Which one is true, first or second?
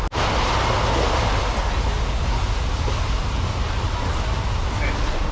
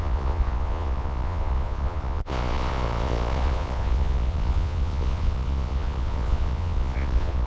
first